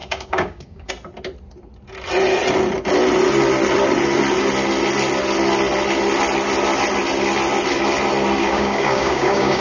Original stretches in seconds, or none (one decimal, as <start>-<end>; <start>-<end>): 0.9-8.4